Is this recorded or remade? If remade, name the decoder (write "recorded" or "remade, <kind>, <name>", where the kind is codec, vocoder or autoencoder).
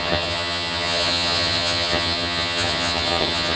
remade, vocoder, HiFi-GAN